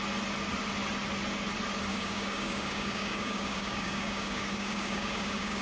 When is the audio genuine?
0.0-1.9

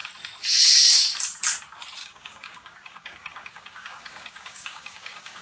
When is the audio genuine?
0.0-2.0

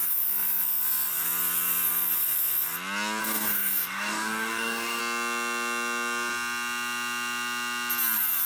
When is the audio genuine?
0.0-3.2; 5.0-8.5

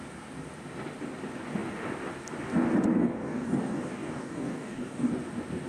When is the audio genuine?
0.0-2.9; 5.1-5.7

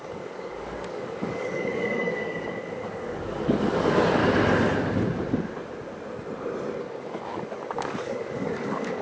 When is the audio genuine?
4.2-6.8

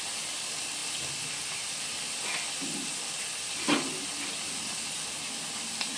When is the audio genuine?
0.0-6.0